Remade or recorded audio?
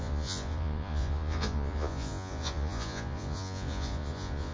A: remade